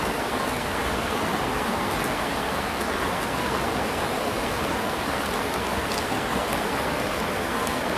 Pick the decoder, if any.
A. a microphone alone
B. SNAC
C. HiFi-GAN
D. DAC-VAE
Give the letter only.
B